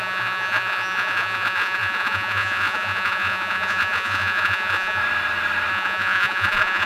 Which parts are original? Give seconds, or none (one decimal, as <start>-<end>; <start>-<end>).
5.0-5.7